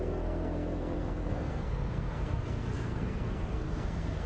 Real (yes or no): no